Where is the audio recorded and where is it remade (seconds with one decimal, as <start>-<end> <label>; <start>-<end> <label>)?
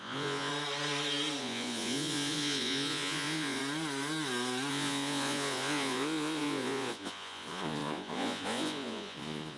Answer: 0.0-0.5 remade; 0.5-1.4 recorded; 1.4-3.6 remade; 3.6-4.7 recorded; 4.7-9.6 remade